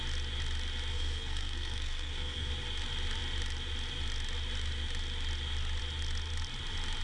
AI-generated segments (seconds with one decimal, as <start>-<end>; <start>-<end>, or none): 0.9-2.5